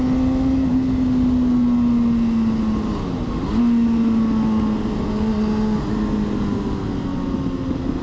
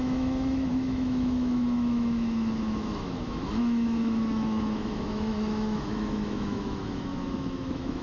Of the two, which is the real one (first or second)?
first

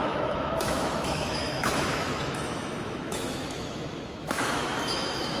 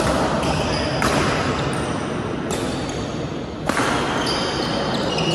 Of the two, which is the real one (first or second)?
second